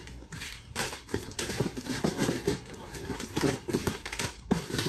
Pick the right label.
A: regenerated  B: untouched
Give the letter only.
A